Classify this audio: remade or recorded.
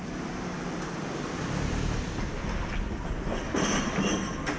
recorded